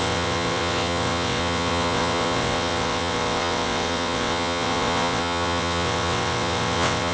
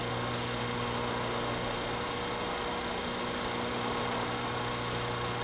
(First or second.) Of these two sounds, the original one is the second